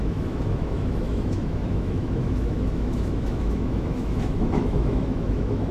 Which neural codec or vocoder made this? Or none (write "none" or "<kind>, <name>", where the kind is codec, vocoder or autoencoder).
autoencoder, DAC-VAE